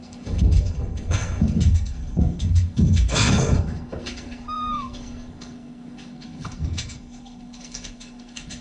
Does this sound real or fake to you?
fake